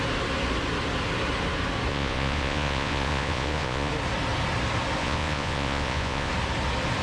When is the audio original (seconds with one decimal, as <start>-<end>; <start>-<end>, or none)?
0.0-1.9; 3.9-5.0; 6.3-7.0